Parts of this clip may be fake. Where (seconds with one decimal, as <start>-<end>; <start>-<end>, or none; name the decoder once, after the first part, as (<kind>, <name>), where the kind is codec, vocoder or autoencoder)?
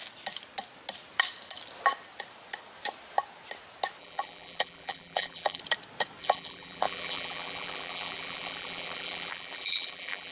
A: 4.0-5.6 (vocoder, BigVGAN v2); 6.2-10.3